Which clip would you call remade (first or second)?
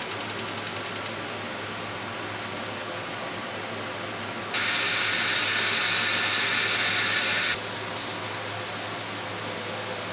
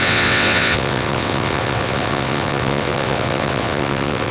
second